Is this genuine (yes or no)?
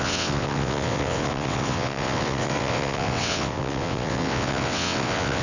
no